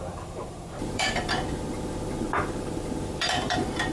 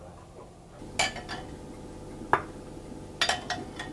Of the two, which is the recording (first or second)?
second